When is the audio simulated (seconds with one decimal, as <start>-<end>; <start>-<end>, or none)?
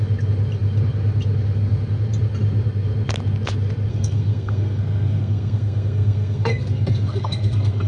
3.9-7.9